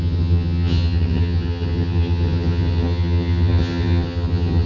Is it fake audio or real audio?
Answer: fake